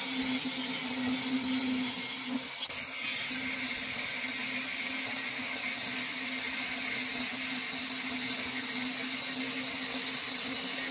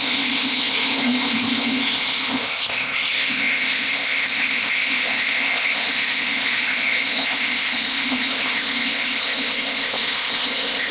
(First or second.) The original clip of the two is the first